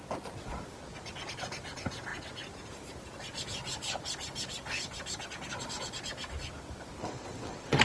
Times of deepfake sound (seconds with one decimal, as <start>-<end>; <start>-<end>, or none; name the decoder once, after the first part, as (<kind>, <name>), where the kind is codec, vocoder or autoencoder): 7.0-7.8 (vocoder, WaveNeXt)